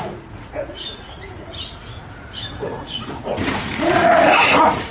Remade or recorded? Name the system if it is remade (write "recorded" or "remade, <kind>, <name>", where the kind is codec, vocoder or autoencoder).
remade, vocoder, Vocos